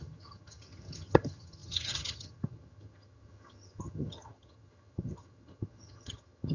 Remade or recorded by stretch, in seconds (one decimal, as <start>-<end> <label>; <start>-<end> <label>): 0.0-6.5 remade